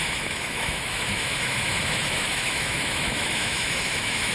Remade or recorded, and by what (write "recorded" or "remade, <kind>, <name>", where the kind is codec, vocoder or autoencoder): remade, autoencoder, DAC-VAE